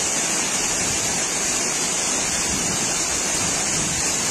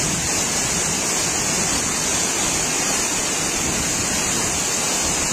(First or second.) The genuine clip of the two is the second